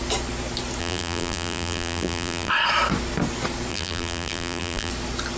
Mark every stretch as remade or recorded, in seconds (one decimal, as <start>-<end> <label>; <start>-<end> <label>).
0.0-0.8 recorded; 0.8-2.5 remade; 2.5-3.7 recorded; 3.7-4.9 remade; 4.9-5.4 recorded